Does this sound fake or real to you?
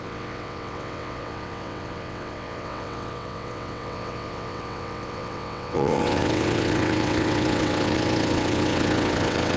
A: fake